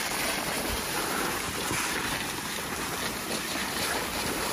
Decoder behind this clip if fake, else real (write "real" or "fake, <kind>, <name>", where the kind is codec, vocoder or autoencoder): real